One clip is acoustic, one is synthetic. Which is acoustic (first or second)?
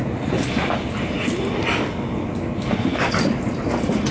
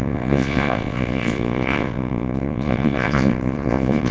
first